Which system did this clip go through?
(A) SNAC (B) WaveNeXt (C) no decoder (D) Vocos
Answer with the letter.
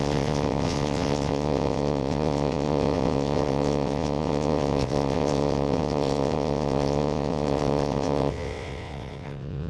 B